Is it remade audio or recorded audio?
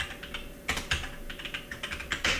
recorded